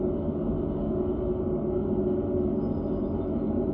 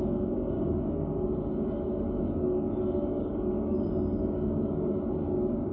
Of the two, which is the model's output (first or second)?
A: second